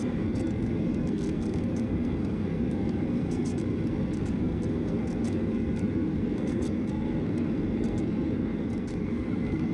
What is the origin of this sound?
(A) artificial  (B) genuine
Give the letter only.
A